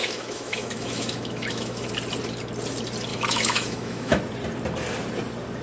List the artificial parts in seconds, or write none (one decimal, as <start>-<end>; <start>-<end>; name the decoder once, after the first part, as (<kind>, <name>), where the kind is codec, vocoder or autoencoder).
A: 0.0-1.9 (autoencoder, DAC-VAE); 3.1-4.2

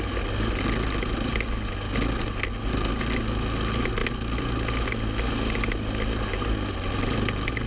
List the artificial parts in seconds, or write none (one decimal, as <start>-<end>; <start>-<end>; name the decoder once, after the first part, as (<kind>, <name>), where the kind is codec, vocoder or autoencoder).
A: none

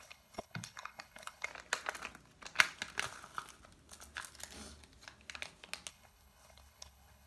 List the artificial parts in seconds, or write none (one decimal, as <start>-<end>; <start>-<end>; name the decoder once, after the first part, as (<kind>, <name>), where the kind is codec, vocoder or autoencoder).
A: 0.0-1.5 (codec, HILCodec); 5.9-7.3

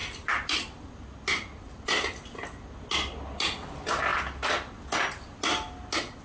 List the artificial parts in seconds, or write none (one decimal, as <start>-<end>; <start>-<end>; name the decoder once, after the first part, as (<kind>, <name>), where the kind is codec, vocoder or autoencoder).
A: none